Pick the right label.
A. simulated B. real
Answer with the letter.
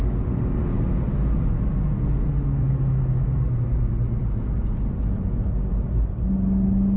B